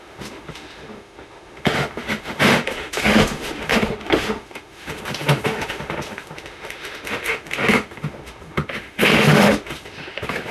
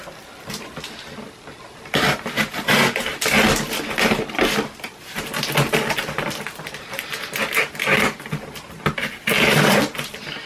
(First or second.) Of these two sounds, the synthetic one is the first